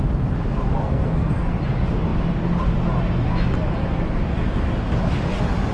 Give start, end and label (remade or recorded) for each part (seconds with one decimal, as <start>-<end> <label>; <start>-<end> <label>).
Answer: 0.0-0.8 recorded; 0.8-1.6 remade; 1.6-5.7 recorded